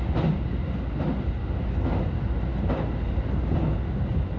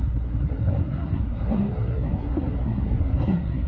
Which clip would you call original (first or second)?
first